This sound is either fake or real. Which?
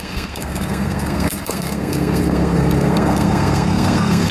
fake